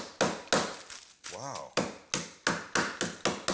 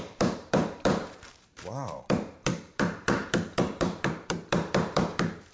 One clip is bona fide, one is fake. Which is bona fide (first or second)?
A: first